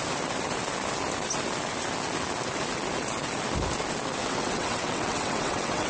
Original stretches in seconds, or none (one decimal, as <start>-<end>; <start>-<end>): 0.0-4.2